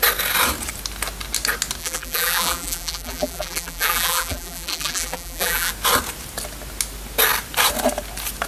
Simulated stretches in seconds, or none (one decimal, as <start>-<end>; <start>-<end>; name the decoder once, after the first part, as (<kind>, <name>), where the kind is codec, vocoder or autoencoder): 1.8-5.7 (vocoder, BigVGAN v2)